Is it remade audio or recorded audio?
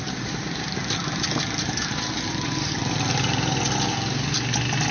recorded